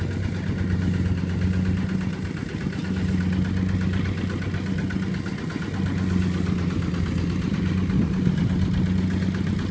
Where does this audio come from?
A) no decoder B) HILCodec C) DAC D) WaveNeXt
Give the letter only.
A